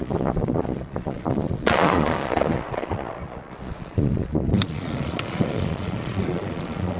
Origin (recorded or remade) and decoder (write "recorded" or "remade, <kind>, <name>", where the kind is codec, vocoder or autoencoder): remade, vocoder, Vocos